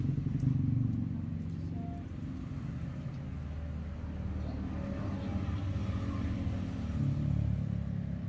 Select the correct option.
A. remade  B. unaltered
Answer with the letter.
B